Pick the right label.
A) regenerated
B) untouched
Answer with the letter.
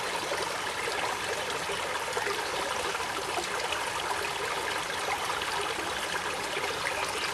B